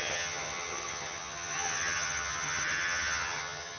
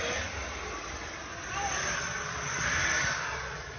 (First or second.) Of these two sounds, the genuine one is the second